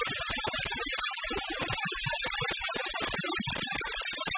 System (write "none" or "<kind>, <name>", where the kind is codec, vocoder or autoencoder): none